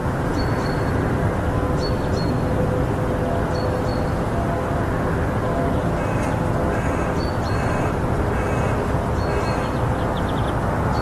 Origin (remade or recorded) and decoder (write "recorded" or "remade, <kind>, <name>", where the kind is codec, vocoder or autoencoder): recorded